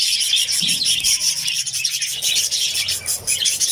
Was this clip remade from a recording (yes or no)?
no